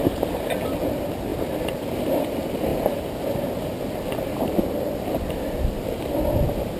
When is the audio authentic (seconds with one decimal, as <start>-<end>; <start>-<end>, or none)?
0.0-1.3; 2.2-6.8